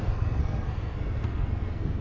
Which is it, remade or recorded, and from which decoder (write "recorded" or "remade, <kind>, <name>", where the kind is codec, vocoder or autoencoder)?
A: remade, codec, SNAC